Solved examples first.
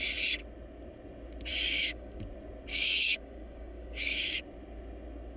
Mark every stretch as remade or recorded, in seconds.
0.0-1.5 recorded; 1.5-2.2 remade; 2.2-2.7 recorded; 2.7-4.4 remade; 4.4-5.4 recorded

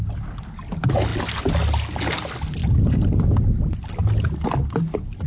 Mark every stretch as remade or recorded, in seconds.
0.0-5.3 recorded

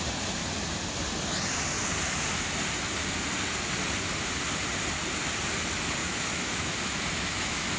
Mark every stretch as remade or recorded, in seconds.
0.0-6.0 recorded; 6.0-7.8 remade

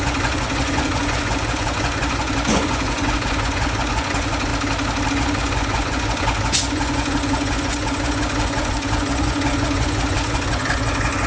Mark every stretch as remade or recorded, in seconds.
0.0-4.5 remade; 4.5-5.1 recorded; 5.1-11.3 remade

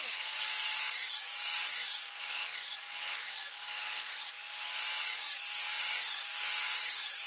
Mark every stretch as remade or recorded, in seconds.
0.0-4.4 remade; 4.4-5.0 recorded; 5.0-7.3 remade